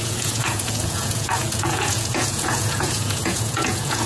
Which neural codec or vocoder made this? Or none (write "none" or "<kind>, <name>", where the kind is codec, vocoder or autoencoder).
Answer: vocoder, Vocos